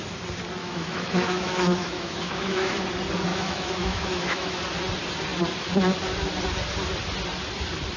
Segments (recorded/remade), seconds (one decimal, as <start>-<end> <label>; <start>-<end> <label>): 0.0-0.6 recorded; 0.6-2.8 remade; 2.8-3.3 recorded; 3.3-4.6 remade; 4.6-8.0 recorded